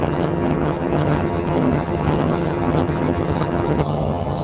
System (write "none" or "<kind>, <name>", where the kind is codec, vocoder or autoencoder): vocoder, HiFi-GAN